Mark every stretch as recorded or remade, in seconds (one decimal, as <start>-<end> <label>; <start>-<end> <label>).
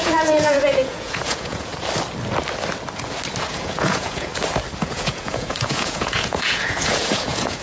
0.0-1.7 remade; 1.7-3.5 recorded; 3.5-4.3 remade; 4.3-4.8 recorded; 4.8-7.6 remade